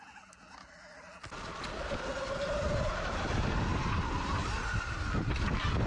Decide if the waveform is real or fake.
real